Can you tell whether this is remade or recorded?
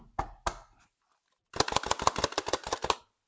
recorded